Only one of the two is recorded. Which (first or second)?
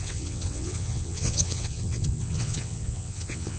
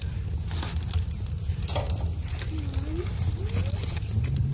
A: second